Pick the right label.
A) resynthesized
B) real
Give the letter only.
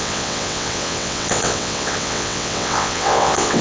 A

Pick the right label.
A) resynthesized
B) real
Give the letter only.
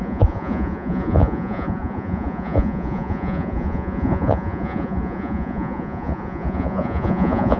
A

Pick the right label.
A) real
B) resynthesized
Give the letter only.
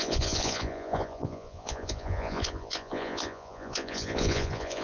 B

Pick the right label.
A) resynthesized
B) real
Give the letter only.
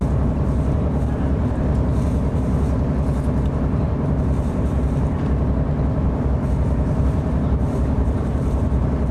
A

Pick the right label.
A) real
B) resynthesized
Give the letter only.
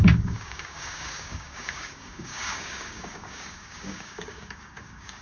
B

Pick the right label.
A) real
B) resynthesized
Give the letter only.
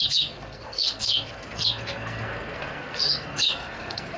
B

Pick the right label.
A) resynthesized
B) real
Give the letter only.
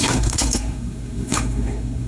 A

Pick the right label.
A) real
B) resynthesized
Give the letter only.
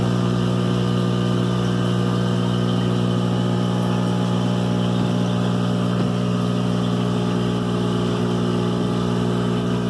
B